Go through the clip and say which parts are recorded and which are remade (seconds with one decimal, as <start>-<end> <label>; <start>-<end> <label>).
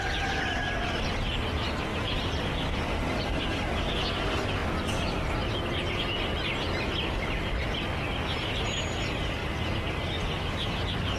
0.0-1.9 recorded; 1.9-3.9 remade; 3.9-9.4 recorded; 9.4-10.0 remade; 10.0-11.2 recorded